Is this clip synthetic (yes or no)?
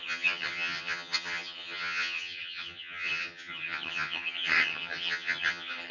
yes